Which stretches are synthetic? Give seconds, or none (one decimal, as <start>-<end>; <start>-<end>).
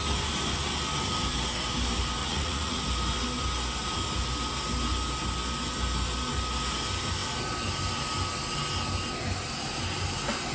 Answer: 2.2-2.8